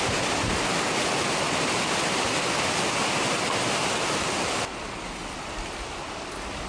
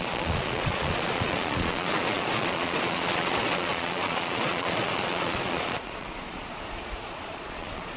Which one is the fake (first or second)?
second